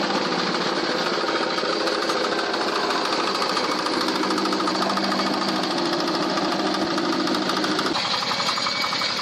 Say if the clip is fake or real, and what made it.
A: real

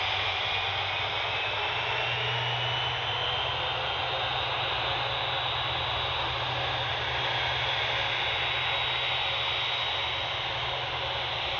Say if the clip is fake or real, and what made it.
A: real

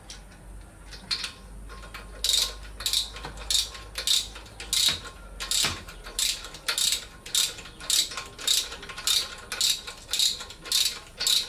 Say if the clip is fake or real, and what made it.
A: real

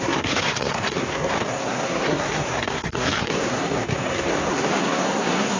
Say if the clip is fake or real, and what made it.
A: fake, codec, SNAC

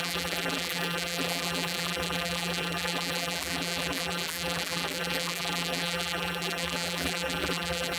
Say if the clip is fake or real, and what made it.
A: fake, vocoder, BigVGAN v2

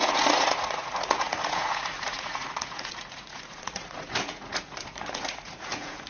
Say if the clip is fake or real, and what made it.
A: fake, vocoder, Vocos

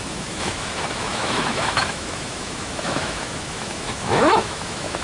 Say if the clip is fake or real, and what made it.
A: fake, autoencoder, DAC-VAE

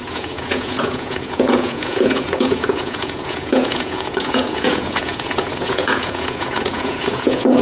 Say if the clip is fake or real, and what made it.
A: fake, vocoder, Vocos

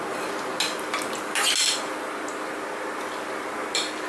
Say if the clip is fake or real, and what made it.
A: real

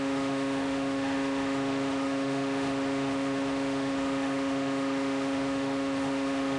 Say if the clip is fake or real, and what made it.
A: fake, autoencoder, DAC-VAE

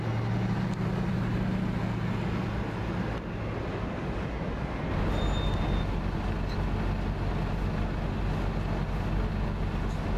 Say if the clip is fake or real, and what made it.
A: real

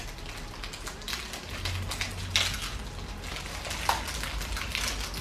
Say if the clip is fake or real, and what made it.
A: real